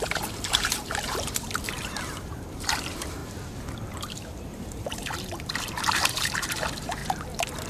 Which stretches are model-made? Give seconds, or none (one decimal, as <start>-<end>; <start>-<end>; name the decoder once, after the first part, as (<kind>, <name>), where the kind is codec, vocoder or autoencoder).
0.0-3.2 (vocoder, BigVGAN v2); 3.9-7.0